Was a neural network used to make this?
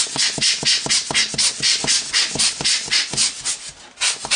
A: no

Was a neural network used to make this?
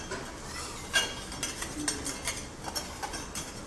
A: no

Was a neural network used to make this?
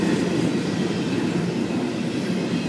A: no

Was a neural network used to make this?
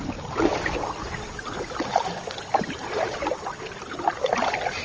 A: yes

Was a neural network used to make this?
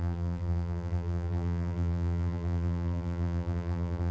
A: yes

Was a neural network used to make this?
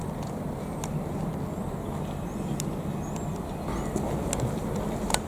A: no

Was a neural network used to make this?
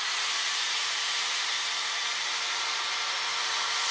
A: yes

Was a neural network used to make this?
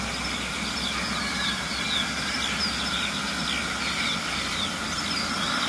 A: no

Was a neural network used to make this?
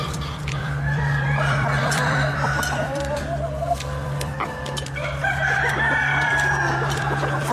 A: yes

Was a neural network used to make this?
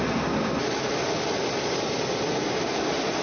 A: no